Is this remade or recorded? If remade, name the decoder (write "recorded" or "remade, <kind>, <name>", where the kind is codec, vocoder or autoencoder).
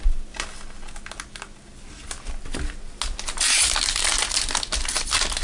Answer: recorded